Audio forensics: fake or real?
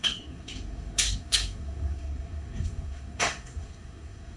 fake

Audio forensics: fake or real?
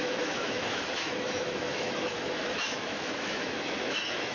fake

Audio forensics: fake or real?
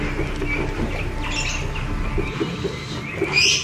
real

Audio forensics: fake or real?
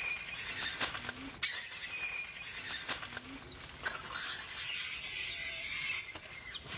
real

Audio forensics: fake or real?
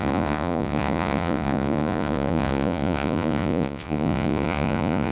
fake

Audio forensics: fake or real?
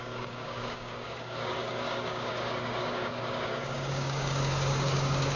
fake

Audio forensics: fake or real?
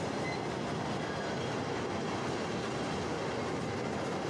real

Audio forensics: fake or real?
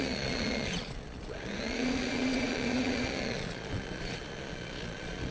fake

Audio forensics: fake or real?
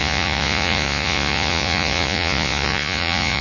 fake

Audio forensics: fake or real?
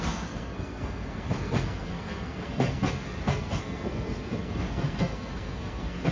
fake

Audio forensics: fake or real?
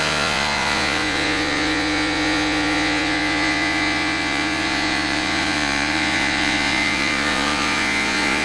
fake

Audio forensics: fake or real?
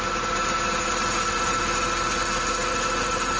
real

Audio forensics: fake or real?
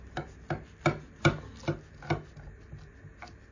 real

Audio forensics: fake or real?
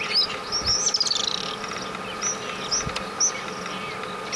real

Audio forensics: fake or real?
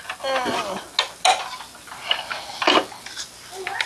real